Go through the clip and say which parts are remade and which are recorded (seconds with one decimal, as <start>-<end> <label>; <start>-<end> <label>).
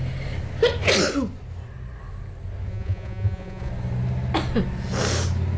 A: 0.0-2.7 recorded; 2.7-3.7 remade; 3.7-5.6 recorded